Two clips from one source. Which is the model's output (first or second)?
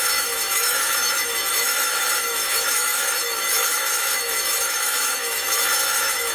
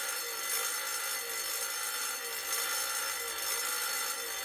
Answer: first